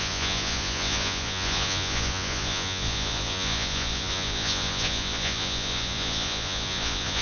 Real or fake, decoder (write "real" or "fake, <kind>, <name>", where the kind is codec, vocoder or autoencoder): fake, vocoder, Vocos